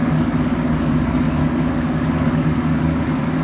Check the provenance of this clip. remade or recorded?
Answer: remade